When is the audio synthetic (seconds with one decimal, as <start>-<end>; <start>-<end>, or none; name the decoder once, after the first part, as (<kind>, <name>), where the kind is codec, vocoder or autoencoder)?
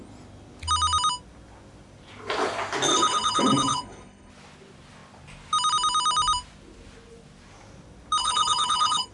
2.9-4.3 (codec, HILCodec); 8.2-9.1